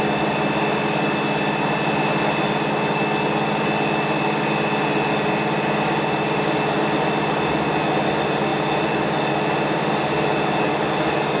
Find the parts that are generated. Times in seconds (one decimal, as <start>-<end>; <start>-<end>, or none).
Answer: none